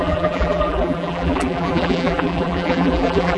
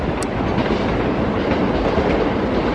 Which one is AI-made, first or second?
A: first